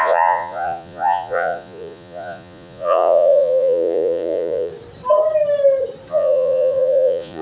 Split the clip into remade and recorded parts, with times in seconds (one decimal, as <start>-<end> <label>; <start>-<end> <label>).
0.0-4.7 remade; 4.7-6.1 recorded; 6.1-7.4 remade